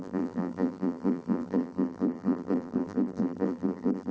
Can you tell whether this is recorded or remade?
remade